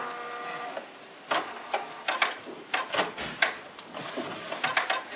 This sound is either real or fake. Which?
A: real